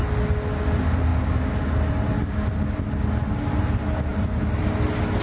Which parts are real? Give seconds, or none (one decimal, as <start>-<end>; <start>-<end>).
0.0-5.2